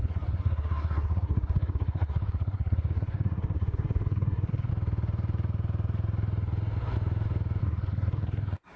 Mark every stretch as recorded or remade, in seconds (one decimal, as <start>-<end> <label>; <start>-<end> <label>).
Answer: 0.0-4.7 remade; 4.7-7.6 recorded; 7.6-8.8 remade